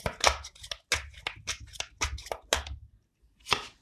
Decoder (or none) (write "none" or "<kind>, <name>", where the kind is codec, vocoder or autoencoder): none